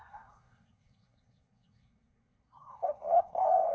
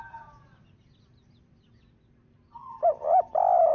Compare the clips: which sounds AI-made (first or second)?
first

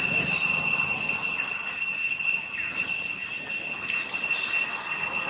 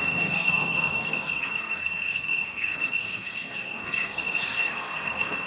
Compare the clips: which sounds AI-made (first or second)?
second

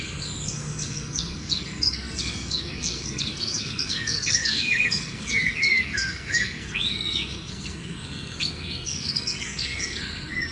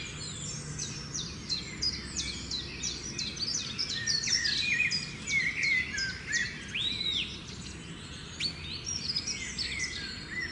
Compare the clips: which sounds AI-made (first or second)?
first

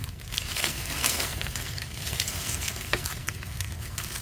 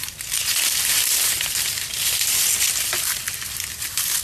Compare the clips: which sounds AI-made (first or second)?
first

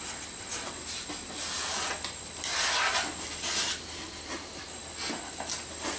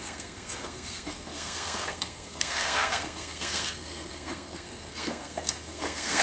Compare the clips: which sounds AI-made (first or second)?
second